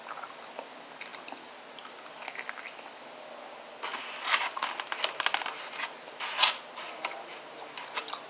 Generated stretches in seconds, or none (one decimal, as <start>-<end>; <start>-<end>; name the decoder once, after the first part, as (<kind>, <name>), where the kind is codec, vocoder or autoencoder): none